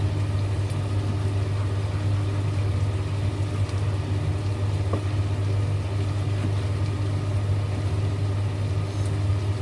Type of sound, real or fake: real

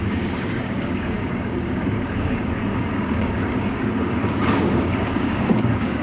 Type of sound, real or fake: fake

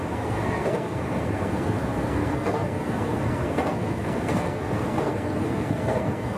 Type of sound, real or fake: fake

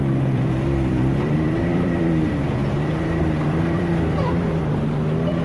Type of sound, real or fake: fake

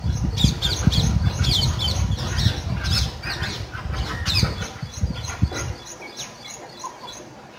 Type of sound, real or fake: real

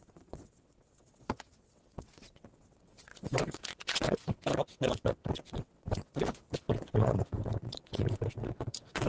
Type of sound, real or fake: fake